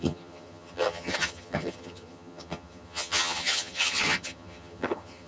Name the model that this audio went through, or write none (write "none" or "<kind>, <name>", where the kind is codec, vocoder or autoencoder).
vocoder, HiFi-GAN